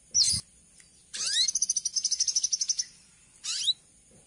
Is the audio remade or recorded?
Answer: recorded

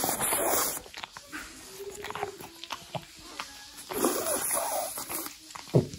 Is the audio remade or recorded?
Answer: recorded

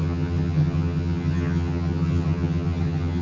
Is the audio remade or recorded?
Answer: remade